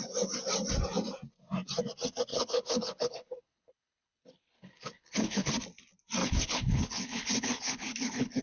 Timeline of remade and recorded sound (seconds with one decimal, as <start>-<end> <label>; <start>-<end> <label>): 0.0-2.3 recorded; 2.3-5.5 remade; 5.5-6.2 recorded; 6.2-8.4 remade